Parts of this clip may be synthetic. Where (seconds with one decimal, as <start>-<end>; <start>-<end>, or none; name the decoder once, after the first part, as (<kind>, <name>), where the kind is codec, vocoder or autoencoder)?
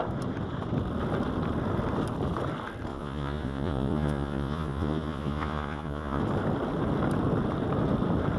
2.9-6.2 (vocoder, Vocos)